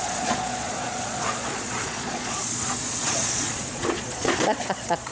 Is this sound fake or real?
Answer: fake